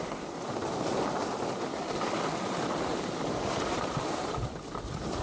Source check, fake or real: real